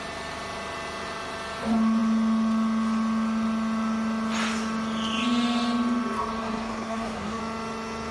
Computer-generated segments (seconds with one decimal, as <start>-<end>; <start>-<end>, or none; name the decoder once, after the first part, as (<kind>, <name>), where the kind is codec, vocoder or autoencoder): 6.4-7.4 (codec, SNAC)